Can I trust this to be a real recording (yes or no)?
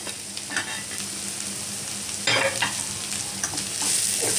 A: yes